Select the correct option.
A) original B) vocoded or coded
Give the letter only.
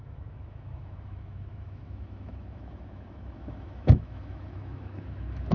B